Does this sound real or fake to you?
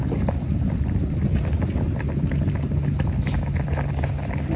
real